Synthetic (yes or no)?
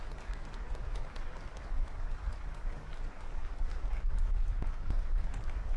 yes